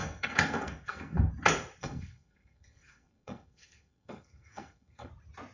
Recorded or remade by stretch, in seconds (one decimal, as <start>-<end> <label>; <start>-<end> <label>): 0.0-1.3 remade; 1.3-1.8 recorded; 1.8-5.1 remade; 5.1-5.5 recorded